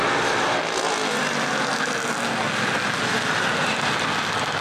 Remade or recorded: recorded